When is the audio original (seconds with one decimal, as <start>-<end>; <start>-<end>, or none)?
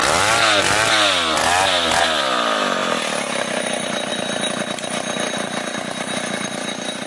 0.0-7.1